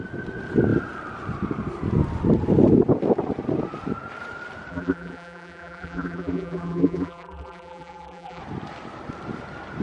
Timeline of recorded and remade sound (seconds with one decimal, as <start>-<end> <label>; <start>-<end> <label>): 0.0-4.7 recorded; 4.7-8.4 remade; 8.4-9.8 recorded